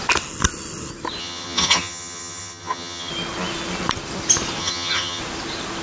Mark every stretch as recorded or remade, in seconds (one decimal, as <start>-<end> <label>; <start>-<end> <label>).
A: 0.0-1.2 recorded; 1.2-3.1 remade; 3.1-4.6 recorded; 4.6-5.2 remade; 5.2-5.8 recorded